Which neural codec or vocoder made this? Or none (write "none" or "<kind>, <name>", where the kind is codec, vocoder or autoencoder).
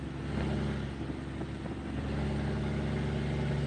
none